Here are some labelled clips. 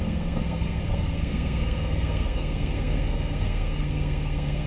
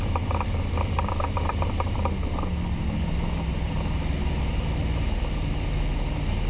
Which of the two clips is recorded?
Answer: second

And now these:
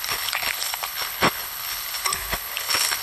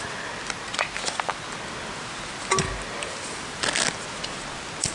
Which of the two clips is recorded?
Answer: second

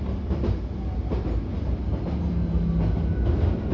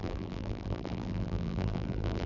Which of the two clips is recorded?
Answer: first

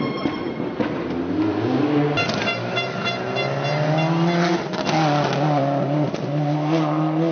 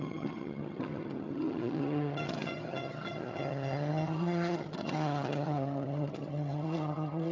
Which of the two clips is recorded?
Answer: first